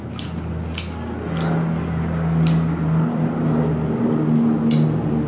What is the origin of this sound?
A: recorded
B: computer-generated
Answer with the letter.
A